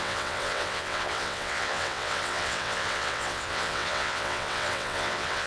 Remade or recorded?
remade